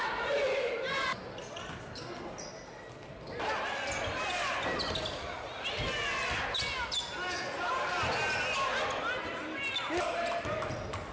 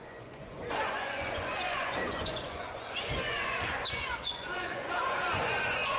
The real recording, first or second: first